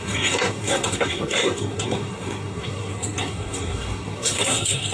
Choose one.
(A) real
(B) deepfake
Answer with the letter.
B